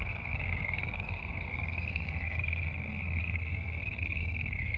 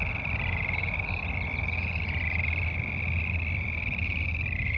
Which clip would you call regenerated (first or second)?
first